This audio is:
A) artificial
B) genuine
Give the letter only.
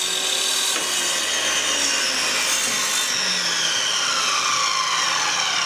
B